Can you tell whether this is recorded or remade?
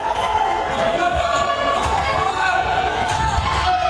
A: remade